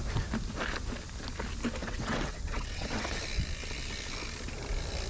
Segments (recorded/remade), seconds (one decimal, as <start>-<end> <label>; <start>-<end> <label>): 0.0-1.8 recorded; 1.8-3.2 remade; 3.2-5.1 recorded